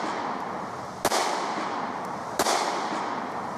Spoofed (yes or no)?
no